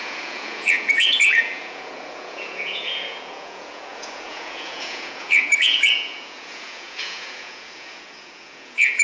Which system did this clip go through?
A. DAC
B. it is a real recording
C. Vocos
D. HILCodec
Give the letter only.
C